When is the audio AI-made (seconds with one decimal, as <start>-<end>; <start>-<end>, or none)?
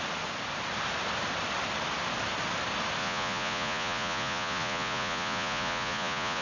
3.0-6.4